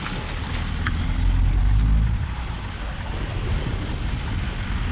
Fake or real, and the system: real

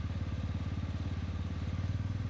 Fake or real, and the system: real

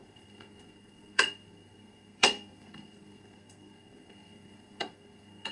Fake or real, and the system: fake, codec, SNAC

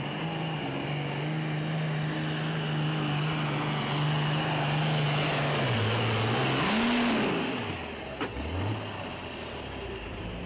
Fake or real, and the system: real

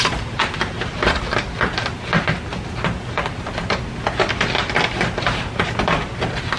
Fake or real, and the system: real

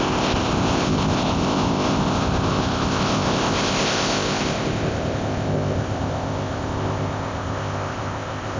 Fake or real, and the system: fake, codec, ZipCodec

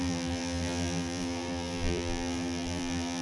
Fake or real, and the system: fake, vocoder, BigVGAN v2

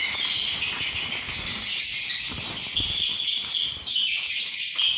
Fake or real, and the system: real